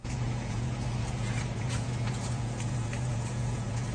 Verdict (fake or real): fake